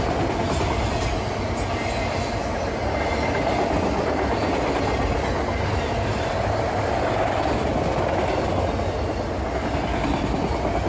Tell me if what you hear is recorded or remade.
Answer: recorded